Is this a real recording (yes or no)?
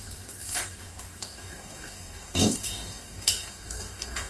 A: no